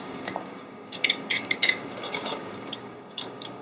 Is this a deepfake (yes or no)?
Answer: yes